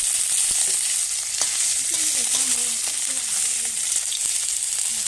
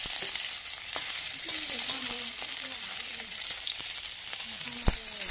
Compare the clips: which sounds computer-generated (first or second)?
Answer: second